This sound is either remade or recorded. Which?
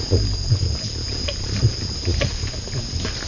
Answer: recorded